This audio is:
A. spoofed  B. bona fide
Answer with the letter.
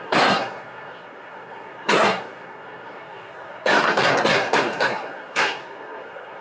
A